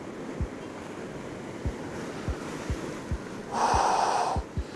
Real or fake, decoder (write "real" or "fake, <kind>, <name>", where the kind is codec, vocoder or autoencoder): real